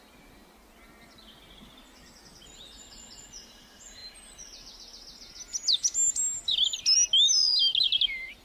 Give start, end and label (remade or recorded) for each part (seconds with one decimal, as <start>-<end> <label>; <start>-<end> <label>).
0.0-8.4 recorded